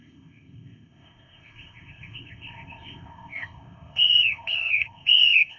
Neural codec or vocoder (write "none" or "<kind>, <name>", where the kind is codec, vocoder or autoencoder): codec, ZipCodec